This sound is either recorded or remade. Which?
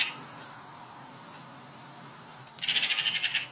recorded